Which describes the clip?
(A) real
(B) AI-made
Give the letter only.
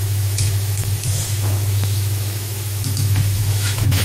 B